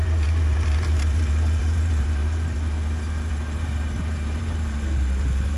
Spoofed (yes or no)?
yes